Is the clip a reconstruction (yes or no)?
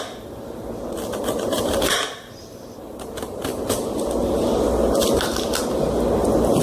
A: yes